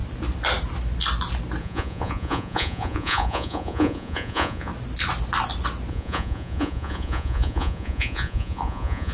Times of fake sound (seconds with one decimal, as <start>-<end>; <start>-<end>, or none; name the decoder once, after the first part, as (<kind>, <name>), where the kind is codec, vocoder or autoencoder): 1.6-4.7 (vocoder, Vocos); 5.9-9.1

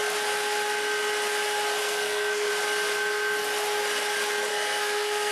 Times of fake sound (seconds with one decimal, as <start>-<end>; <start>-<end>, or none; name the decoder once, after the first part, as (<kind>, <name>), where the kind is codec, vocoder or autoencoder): 1.8-2.5 (codec, SNAC); 4.5-5.3

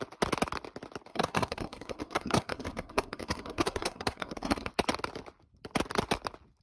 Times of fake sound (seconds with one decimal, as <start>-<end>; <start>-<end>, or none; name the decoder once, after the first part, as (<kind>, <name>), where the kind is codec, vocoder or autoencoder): 1.1-4.7 (codec, SNAC)